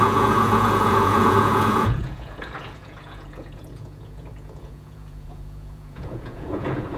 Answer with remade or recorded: remade